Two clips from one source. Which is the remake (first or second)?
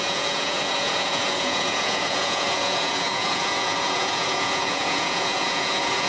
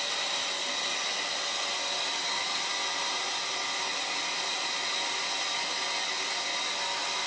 first